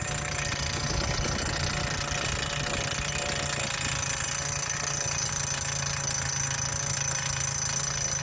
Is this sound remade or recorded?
recorded